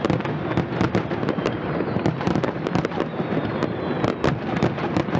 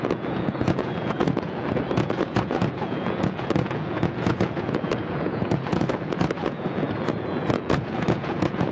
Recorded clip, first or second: first